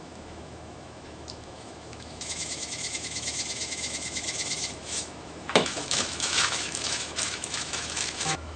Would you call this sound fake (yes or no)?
yes